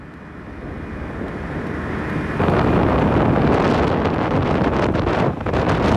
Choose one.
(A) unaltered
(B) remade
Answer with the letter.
A